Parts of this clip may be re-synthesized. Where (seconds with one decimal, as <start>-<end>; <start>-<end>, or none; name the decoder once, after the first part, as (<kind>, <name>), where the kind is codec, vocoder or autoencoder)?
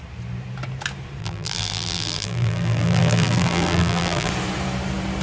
1.2-4.3 (vocoder, BigVGAN v2)